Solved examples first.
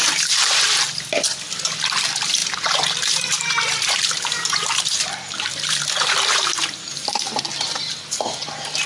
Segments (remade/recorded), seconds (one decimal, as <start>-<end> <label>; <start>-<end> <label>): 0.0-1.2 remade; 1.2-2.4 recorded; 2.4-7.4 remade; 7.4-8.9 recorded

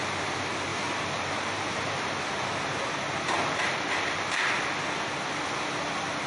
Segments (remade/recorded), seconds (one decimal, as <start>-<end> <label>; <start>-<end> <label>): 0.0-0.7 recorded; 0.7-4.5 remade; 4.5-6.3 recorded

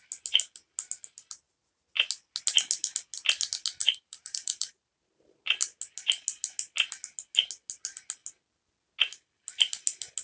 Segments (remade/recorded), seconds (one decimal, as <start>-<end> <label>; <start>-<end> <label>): 0.0-3.8 recorded; 3.8-5.4 remade; 5.4-10.2 recorded